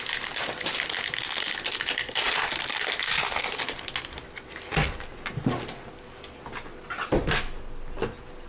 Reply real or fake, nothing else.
real